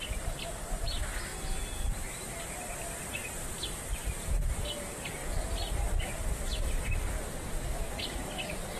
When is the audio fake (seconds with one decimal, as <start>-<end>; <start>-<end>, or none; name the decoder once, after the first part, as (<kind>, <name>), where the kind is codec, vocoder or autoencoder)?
4.0-4.6 (vocoder, BigVGAN v2)

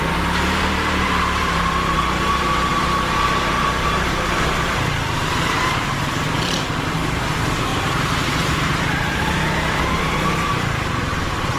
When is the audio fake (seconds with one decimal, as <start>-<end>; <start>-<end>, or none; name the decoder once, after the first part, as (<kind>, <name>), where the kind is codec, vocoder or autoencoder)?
0.0-11.6 (vocoder, BigVGAN v2)

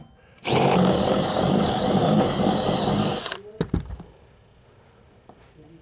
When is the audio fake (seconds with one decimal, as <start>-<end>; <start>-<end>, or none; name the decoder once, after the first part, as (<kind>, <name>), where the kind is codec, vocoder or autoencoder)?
0.4-3.6 (vocoder, BigVGAN v2)

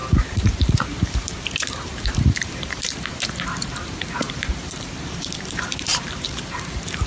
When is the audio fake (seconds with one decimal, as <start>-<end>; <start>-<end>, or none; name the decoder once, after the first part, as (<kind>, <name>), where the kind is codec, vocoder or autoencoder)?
0.0-7.1 (vocoder, BigVGAN v2)